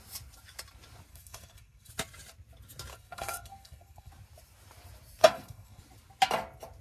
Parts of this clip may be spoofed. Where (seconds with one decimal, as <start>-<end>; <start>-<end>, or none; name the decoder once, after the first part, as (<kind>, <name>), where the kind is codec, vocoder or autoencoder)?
1.1-1.9 (codec, SNAC); 2.9-4.1; 5.2-5.8